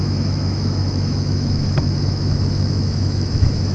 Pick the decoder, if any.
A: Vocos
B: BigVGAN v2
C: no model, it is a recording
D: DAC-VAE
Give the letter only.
D